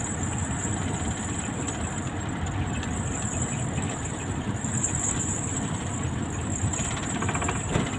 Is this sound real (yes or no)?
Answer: yes